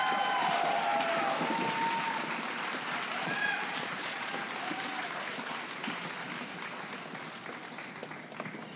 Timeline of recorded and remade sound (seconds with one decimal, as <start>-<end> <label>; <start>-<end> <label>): 0.0-3.2 recorded; 3.2-4.3 remade; 4.3-8.8 recorded